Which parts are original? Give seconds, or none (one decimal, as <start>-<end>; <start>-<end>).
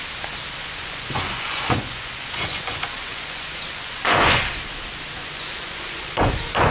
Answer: 0.0-0.6; 4.5-5.2